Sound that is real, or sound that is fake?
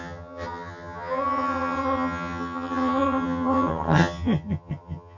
fake